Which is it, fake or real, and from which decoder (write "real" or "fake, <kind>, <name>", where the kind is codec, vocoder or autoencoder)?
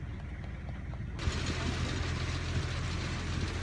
real